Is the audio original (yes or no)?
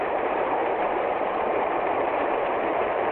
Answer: no